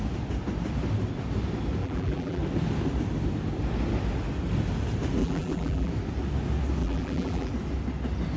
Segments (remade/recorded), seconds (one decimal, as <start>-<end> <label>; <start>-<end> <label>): 0.0-1.8 recorded; 1.8-2.4 remade; 2.4-5.2 recorded; 5.2-5.9 remade; 5.9-6.8 recorded; 6.8-7.5 remade; 7.5-8.4 recorded